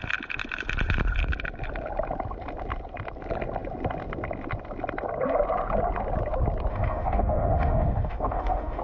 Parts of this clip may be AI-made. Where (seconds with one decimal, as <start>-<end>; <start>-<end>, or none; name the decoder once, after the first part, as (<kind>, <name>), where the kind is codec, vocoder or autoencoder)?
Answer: 6.7-8.8 (autoencoder, DAC-VAE)